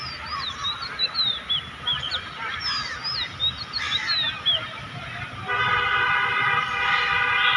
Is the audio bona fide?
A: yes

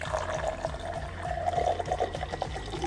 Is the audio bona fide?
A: yes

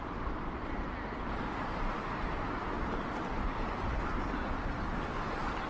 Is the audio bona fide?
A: yes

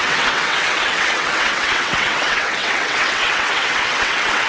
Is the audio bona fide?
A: no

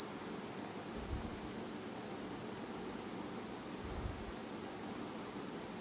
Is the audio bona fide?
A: yes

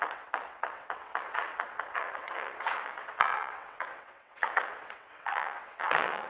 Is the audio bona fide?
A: no